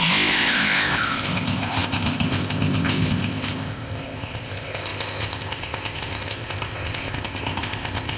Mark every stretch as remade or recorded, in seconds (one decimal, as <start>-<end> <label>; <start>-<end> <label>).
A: 0.0-8.2 remade

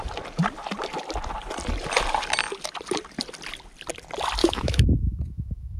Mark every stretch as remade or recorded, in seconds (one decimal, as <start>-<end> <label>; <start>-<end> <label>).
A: 0.0-4.4 recorded; 4.4-5.8 remade

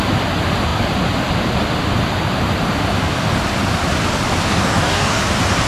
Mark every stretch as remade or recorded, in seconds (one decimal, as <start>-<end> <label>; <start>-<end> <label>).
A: 0.0-4.5 recorded; 4.5-5.2 remade; 5.2-5.7 recorded

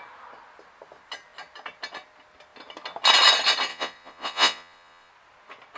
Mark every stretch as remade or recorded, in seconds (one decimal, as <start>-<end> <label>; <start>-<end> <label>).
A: 0.0-3.7 recorded; 3.7-5.1 remade; 5.1-5.8 recorded

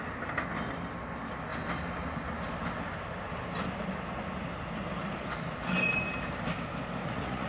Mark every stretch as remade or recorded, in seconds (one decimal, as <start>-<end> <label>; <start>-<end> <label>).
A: 0.0-7.0 recorded; 7.0-7.5 remade

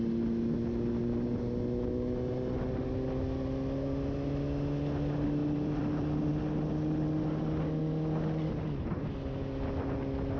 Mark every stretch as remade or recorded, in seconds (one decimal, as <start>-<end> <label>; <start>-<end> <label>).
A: 0.0-5.4 recorded; 5.4-6.3 remade; 6.3-10.4 recorded

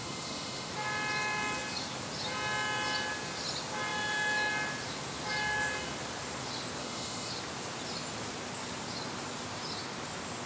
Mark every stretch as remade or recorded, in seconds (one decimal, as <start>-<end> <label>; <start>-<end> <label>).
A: 0.0-0.7 remade; 0.7-6.8 recorded; 6.8-7.3 remade; 7.3-10.5 recorded